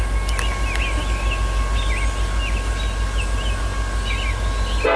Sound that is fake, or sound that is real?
real